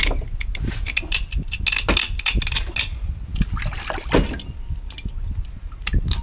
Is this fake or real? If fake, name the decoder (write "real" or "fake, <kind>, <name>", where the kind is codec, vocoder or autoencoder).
real